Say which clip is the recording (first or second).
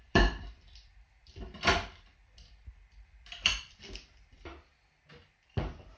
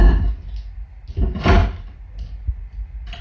second